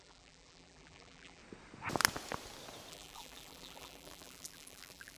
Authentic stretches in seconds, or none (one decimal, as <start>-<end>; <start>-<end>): 1.4-2.9